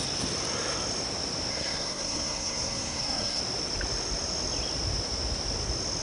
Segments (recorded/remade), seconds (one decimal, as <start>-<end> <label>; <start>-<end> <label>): 0.0-1.5 recorded; 1.5-3.4 remade; 3.4-6.0 recorded